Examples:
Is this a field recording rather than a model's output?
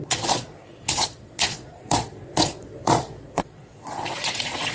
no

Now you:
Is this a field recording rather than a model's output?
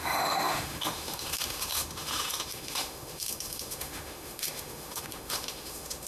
no